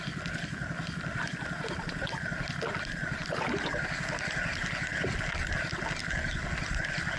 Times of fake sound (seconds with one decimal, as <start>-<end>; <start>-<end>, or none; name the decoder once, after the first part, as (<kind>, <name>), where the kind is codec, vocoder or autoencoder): none